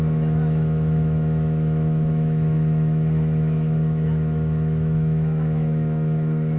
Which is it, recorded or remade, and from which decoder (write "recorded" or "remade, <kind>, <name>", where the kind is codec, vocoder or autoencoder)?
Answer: remade, autoencoder, DAC-VAE